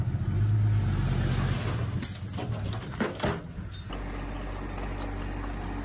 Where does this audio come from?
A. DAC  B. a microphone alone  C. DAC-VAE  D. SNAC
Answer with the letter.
B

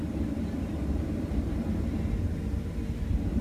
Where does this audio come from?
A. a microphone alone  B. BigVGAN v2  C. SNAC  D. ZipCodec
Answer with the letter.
A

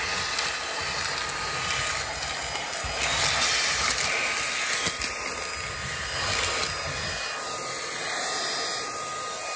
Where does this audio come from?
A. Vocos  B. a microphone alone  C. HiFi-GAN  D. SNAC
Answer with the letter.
B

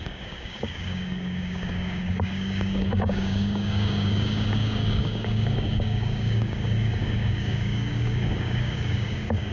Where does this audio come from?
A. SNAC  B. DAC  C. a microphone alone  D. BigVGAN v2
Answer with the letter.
B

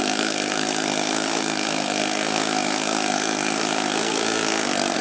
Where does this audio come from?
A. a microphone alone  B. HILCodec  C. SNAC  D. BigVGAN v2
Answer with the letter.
C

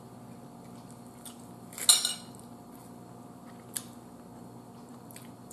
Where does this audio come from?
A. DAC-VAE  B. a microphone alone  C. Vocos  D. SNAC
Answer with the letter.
B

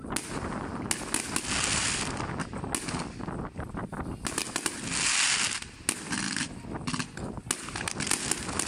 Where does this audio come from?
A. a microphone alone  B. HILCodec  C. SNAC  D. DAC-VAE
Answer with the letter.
A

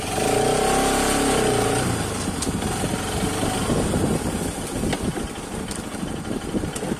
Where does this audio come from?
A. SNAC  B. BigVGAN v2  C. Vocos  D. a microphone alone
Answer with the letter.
D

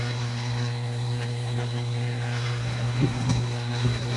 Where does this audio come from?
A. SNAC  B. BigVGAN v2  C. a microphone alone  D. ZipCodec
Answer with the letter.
A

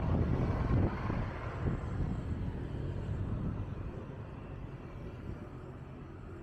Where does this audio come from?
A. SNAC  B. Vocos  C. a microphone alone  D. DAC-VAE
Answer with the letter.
C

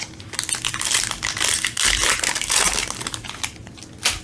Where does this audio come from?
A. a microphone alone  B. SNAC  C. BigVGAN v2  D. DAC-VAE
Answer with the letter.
A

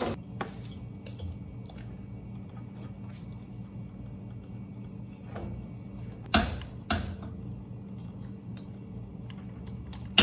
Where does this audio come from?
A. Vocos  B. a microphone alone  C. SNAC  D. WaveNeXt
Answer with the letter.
B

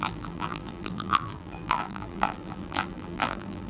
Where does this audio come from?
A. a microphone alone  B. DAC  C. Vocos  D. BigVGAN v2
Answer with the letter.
D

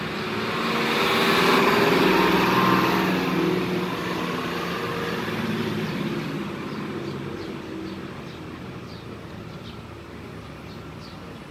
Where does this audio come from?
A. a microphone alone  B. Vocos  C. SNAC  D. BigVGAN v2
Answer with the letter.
A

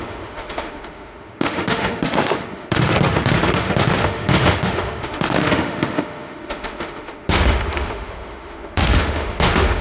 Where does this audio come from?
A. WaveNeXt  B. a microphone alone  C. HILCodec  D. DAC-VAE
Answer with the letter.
D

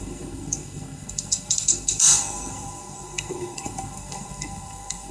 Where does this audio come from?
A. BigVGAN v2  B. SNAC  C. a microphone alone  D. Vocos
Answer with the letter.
B